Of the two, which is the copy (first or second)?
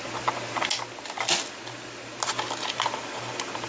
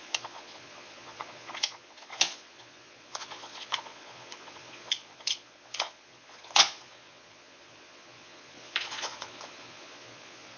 second